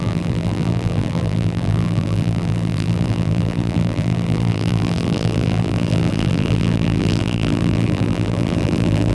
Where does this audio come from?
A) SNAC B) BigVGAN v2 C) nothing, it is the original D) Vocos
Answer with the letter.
B